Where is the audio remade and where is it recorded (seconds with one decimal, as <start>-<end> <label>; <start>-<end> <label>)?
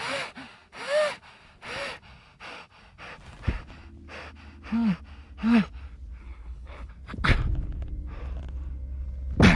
0.0-6.2 recorded; 6.2-6.9 remade; 6.9-9.6 recorded